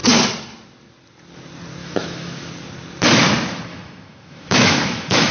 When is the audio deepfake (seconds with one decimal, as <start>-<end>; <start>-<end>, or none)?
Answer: 1.8-2.5; 3.7-5.3